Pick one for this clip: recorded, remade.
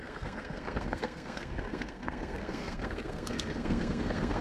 remade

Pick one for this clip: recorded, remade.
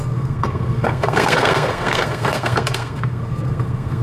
remade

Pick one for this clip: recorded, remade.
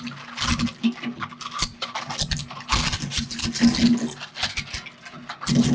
recorded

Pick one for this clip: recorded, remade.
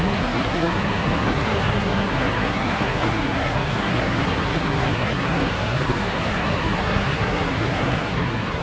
remade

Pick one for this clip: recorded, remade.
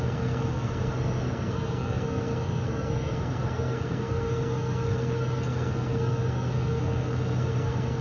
remade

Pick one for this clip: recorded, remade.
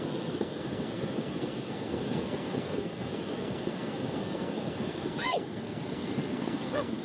remade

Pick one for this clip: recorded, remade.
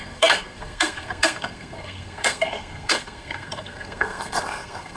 remade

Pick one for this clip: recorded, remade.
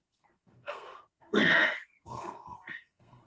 remade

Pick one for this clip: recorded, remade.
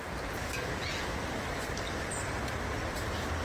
recorded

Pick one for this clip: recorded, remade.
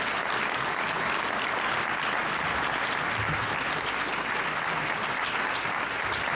recorded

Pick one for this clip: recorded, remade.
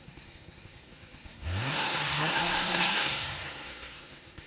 remade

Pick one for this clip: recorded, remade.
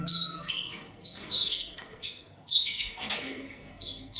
remade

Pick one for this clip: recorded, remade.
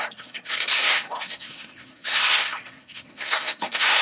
remade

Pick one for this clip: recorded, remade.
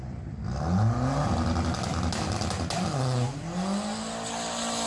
recorded